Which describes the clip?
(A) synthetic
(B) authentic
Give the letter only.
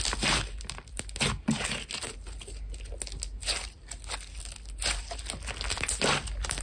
B